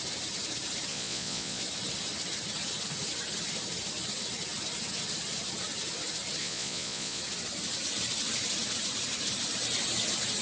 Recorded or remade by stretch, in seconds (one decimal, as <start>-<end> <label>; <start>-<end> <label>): 0.0-0.9 recorded; 0.9-1.6 remade; 1.6-6.4 recorded; 6.4-7.2 remade; 7.2-10.4 recorded